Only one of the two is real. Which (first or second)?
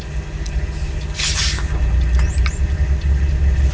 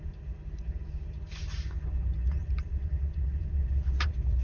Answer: first